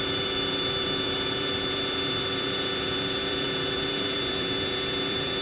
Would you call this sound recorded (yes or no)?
no